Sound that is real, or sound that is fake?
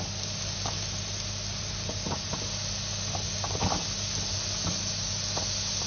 real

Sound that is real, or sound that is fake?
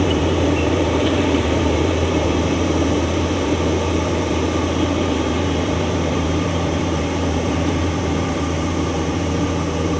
fake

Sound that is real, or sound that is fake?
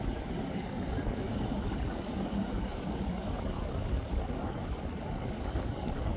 fake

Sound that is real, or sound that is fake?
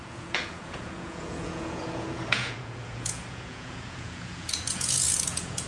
fake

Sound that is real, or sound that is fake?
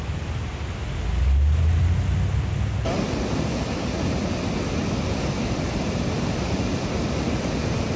real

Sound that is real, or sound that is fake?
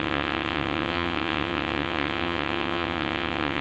fake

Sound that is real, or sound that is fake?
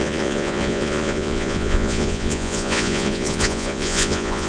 fake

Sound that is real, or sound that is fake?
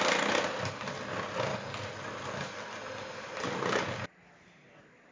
real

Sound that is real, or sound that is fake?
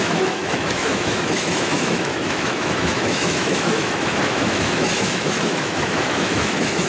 fake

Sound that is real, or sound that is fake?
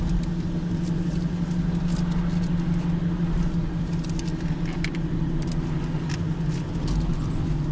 real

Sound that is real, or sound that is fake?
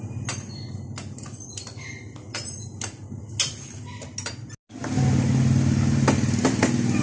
real